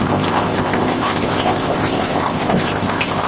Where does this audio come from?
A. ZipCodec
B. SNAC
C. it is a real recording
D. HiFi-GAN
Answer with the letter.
A